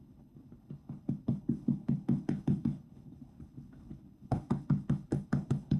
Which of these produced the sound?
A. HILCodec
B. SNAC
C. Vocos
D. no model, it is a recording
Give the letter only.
A